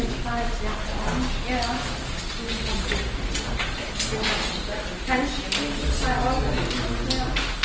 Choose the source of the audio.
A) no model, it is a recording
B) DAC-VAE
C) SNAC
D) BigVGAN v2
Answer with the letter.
A